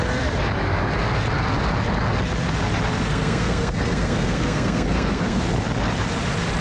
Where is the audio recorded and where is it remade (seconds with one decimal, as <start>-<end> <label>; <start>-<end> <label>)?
0.0-3.1 recorded; 3.1-5.4 remade; 5.4-6.6 recorded

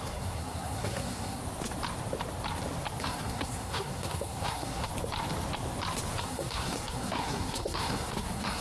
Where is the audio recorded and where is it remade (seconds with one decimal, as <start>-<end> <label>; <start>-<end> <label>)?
0.0-1.4 remade; 1.4-3.0 recorded; 3.0-4.9 remade; 4.9-6.2 recorded; 6.2-8.6 remade

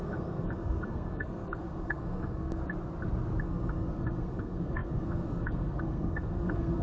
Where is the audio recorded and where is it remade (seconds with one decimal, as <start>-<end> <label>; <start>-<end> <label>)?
0.0-2.6 remade; 2.6-3.4 recorded; 3.4-6.8 remade

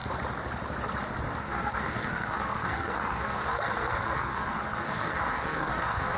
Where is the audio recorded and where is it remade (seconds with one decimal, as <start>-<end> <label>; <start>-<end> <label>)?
0.0-1.4 recorded; 1.4-6.2 remade

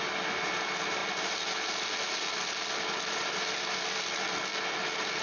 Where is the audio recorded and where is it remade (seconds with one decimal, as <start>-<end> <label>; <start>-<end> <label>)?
0.0-5.2 recorded